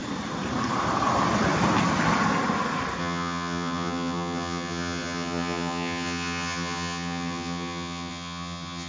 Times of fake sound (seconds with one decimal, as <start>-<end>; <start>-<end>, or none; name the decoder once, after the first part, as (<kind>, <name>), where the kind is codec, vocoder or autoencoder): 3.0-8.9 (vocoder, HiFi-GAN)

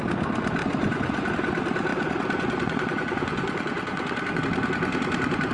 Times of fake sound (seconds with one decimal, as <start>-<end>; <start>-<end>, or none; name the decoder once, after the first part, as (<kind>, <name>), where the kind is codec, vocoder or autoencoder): 0.6-1.3 (vocoder, Vocos); 1.9-4.4

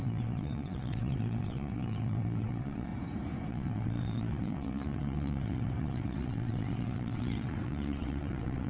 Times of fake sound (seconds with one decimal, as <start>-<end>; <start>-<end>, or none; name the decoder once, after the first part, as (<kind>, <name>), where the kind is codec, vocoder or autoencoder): 0.0-2.9 (vocoder, WaveNeXt); 3.5-8.7